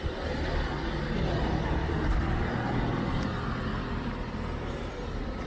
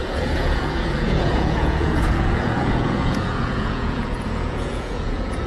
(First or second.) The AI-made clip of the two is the second